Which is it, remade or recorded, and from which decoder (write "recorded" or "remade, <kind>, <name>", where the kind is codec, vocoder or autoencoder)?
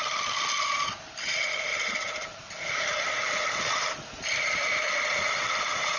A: recorded